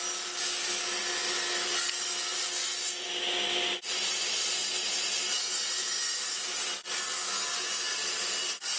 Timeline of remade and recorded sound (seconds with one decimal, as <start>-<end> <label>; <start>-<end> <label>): 0.0-8.8 recorded